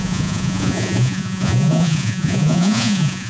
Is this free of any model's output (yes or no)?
no